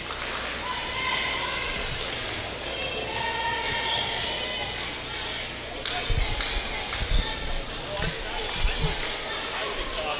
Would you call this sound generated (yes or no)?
no